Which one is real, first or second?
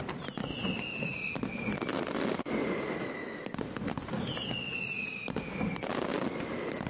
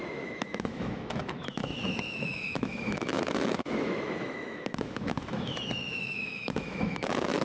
first